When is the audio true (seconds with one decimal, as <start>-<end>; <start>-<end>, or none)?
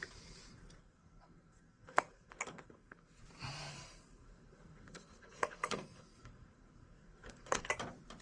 0.0-0.8; 3.2-3.7; 7.7-8.2